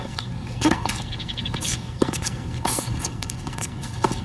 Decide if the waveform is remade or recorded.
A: remade